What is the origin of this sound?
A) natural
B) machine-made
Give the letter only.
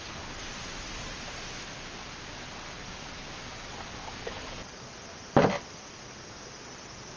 A